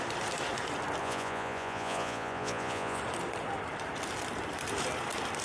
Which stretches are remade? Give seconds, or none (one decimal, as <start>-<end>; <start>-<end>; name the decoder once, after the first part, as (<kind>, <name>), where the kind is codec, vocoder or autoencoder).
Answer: 1.0-3.0 (vocoder, Vocos)